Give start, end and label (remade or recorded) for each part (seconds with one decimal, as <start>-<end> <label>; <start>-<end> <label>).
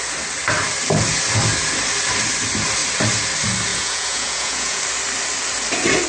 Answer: 0.0-3.7 recorded; 3.7-4.8 remade; 4.8-6.1 recorded